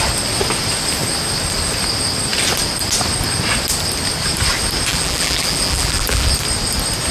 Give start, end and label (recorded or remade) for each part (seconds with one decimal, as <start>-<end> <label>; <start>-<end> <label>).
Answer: 0.0-4.9 recorded; 4.9-6.3 remade; 6.3-7.1 recorded